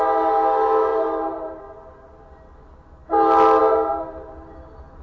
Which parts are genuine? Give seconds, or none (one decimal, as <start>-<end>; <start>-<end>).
0.0-0.9; 1.6-5.0